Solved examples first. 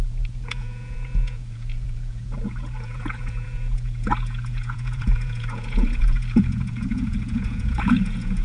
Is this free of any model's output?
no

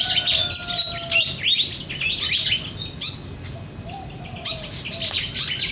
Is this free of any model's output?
yes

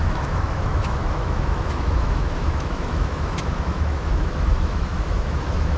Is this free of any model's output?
no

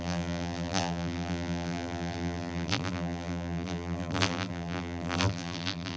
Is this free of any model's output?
no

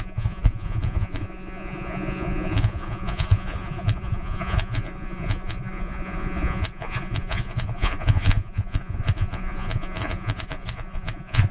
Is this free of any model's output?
no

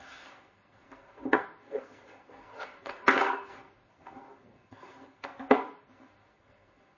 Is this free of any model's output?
no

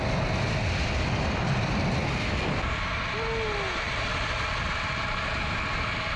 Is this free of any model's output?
yes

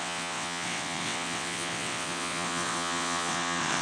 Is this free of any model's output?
no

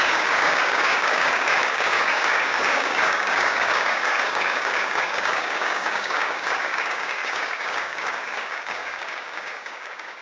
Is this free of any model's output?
no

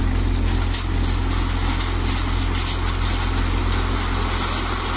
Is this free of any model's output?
yes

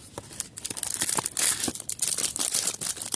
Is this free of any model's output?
yes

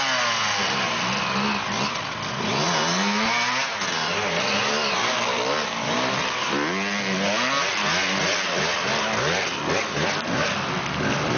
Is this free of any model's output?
yes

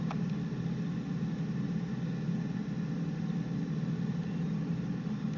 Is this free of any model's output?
yes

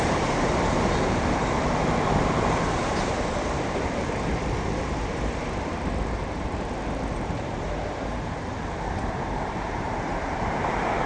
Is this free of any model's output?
no